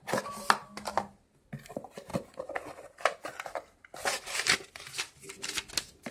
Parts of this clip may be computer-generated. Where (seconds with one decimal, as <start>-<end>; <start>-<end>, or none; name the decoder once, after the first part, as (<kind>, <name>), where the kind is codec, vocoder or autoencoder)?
none